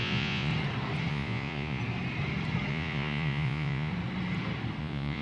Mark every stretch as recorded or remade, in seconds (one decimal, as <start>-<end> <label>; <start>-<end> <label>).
0.0-0.5 remade; 0.5-1.1 recorded; 1.1-1.8 remade; 1.8-2.7 recorded; 2.7-3.9 remade; 3.9-4.8 recorded; 4.8-5.2 remade